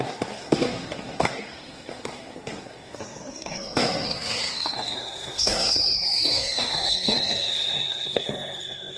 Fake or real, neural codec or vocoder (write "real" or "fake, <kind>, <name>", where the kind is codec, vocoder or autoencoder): fake, codec, SNAC